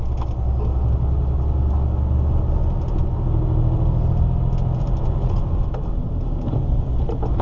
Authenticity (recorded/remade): recorded